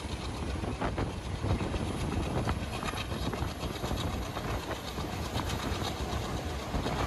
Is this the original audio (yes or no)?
yes